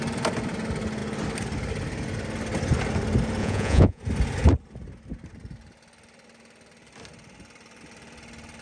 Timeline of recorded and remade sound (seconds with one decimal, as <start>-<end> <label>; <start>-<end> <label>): 0.0-3.4 recorded; 3.4-4.0 remade; 4.0-8.6 recorded